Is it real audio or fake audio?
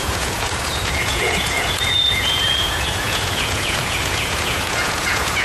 fake